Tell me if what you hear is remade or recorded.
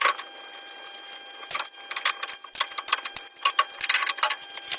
recorded